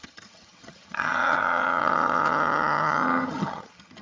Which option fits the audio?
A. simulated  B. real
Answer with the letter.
A